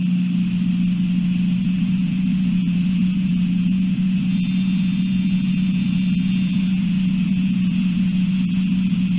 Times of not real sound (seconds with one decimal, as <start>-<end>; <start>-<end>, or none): 1.6-3.3; 3.7-9.2